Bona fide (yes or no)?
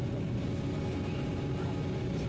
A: yes